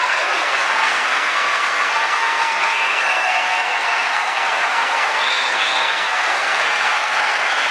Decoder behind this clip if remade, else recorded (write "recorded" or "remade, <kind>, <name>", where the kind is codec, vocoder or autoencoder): remade, codec, SNAC